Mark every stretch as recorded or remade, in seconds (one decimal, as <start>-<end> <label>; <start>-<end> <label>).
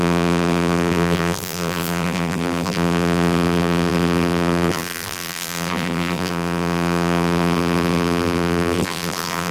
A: 0.0-9.5 remade